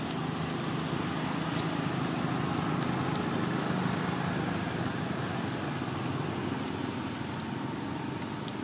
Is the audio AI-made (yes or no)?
no